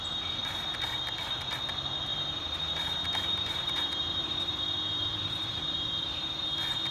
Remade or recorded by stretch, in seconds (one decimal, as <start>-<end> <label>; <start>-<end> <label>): 0.0-2.1 recorded; 2.1-4.3 remade; 4.3-5.1 recorded; 5.1-6.3 remade; 6.3-6.9 recorded